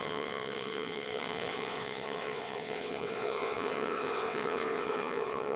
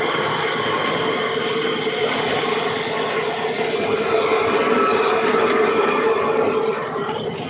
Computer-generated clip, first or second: first